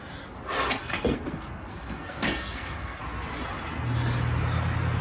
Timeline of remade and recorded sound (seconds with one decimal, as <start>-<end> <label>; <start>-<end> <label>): 0.0-0.8 recorded; 0.8-3.0 remade; 3.0-5.0 recorded